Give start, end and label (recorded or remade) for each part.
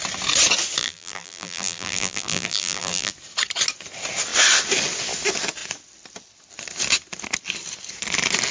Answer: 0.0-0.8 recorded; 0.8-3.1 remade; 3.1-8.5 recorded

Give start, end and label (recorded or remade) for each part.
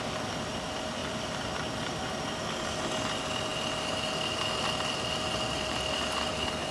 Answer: 0.0-1.0 recorded; 1.0-2.0 remade; 2.0-6.7 recorded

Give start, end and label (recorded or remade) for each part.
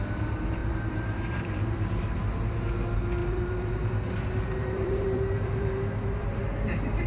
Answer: 0.0-0.6 recorded; 0.6-2.6 remade; 2.6-3.2 recorded; 3.2-6.4 remade; 6.4-7.1 recorded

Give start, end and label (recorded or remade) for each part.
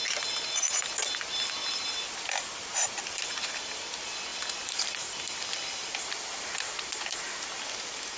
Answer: 0.0-1.6 recorded; 1.6-3.3 remade; 3.3-4.3 recorded; 4.3-7.7 remade; 7.7-8.2 recorded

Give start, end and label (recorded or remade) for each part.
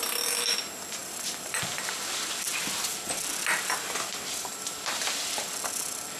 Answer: 0.0-1.0 recorded; 1.0-1.6 remade; 1.6-6.2 recorded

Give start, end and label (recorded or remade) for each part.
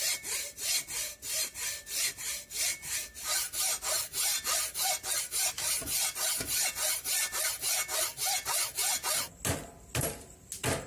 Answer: 0.0-10.9 recorded